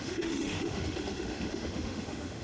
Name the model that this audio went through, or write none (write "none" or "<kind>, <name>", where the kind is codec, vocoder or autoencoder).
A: autoencoder, DAC-VAE